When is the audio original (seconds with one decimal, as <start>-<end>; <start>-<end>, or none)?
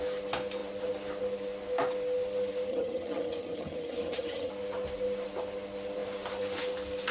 0.0-2.7; 4.5-7.1